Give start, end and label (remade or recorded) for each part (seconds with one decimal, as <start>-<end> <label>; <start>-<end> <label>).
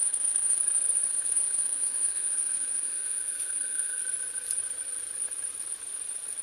0.0-0.6 remade; 0.6-1.1 recorded; 1.1-4.0 remade; 4.0-6.4 recorded